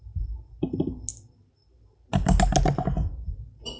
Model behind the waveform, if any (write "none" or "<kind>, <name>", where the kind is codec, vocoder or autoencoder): none